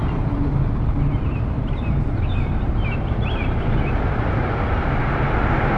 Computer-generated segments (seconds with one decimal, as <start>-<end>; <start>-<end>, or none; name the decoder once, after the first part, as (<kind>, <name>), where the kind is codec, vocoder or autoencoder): 0.0-0.6 (vocoder, BigVGAN v2); 1.1-4.6